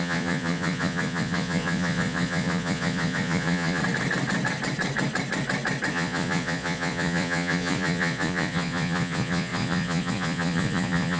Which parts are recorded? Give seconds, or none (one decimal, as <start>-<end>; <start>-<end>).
3.8-5.9